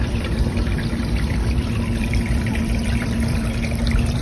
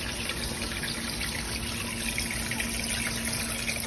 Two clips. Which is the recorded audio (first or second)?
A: second